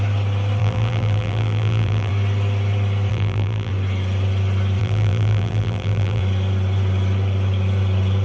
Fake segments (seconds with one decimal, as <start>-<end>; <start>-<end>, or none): 0.6-2.1; 3.1-3.7; 4.8-6.2